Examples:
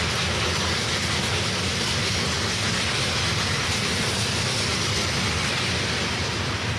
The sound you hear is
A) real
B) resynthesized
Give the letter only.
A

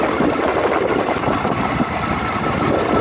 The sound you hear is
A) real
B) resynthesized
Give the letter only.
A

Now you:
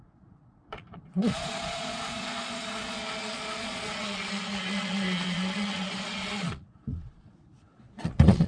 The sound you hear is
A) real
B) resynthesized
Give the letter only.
B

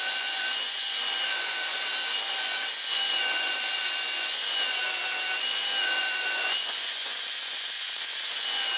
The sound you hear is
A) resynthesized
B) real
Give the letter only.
A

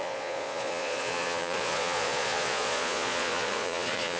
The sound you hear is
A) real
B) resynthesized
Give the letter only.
B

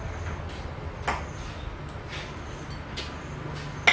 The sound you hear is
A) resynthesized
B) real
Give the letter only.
B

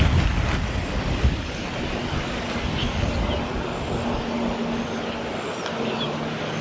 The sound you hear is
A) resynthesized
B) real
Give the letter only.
B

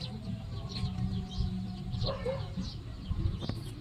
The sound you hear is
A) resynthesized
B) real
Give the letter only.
B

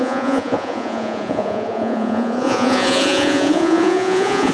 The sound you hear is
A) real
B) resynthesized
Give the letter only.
B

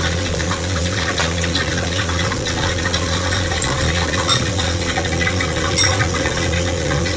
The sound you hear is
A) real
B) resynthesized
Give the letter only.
B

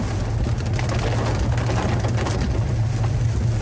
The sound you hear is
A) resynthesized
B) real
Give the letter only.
B